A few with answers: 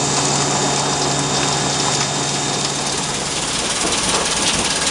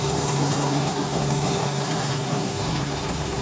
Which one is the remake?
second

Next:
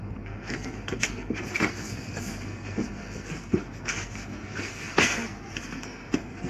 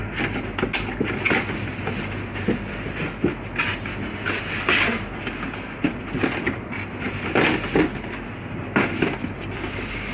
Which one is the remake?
first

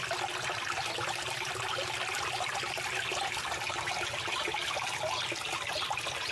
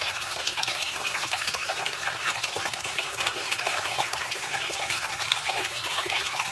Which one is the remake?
second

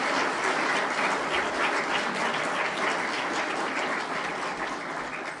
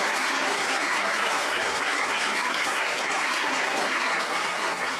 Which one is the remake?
second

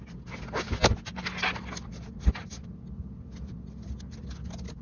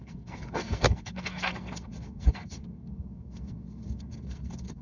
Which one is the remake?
second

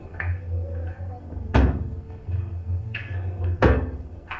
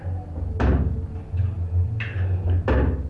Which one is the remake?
first